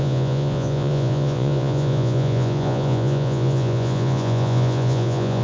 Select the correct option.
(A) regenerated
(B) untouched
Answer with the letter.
A